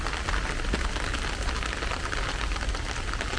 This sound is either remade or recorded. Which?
recorded